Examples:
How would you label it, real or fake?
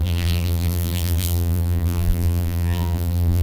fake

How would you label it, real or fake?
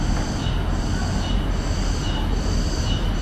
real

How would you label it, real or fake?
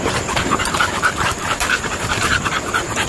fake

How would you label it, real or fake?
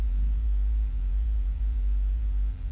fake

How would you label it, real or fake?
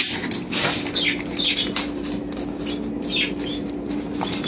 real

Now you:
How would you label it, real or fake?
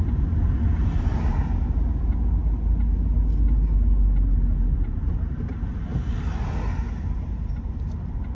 real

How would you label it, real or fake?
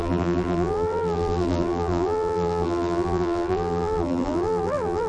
fake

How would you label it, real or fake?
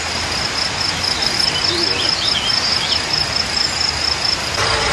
real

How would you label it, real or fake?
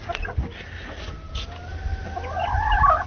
real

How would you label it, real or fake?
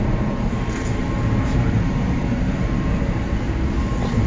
fake